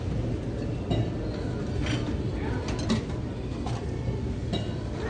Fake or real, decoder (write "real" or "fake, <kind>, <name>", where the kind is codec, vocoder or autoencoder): real